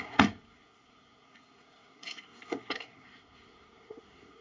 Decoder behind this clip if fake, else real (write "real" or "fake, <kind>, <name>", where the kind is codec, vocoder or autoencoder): fake, codec, SNAC